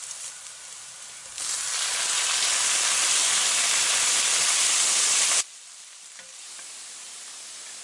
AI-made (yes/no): no